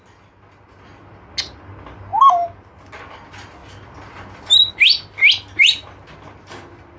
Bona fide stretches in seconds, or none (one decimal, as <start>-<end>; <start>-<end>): 0.0-7.0

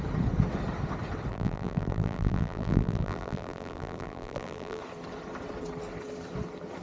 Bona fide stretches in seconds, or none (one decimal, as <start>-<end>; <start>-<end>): 0.0-1.3; 4.8-6.8

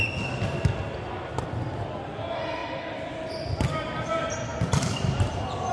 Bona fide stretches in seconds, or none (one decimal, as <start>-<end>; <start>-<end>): 0.0-5.7

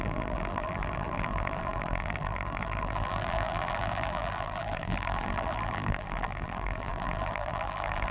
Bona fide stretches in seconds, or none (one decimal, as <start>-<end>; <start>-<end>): none

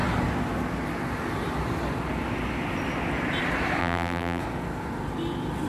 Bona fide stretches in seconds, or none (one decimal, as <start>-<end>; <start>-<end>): 0.0-3.8; 4.4-5.7

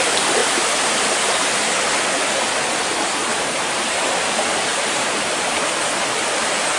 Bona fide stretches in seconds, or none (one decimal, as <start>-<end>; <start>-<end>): 0.0-0.4; 1.0-3.3; 4.1-4.7; 5.6-6.8

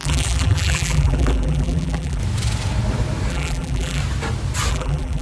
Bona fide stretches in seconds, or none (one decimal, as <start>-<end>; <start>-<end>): 2.2-3.3; 4.0-4.7

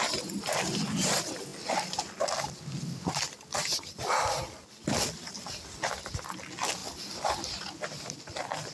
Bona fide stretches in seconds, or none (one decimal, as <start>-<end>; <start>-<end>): 0.0-8.7